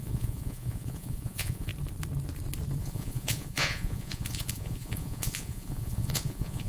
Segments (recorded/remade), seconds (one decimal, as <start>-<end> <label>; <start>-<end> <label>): 0.0-1.7 remade; 1.7-2.8 recorded; 2.8-6.7 remade